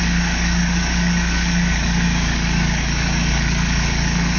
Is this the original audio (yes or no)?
no